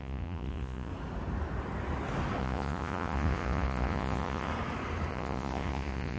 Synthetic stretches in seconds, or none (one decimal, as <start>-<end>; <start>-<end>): 0.0-0.9; 2.4-4.5; 5.1-6.2